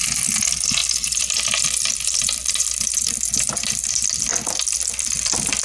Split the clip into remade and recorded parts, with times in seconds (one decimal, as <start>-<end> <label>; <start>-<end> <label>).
0.0-0.8 recorded; 0.8-4.2 remade; 4.2-5.6 recorded